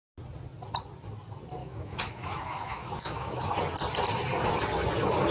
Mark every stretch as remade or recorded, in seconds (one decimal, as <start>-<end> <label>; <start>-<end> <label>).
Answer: 0.0-1.6 recorded; 1.6-3.5 remade; 3.5-5.3 recorded